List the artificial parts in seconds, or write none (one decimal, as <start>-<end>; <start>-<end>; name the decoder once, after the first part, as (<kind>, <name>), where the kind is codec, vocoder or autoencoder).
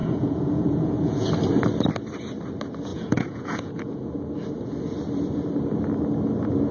0.0-1.3 (vocoder, Vocos); 2.9-4.0